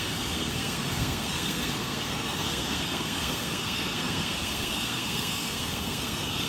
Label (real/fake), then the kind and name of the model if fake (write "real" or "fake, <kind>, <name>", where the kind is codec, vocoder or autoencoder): fake, codec, SNAC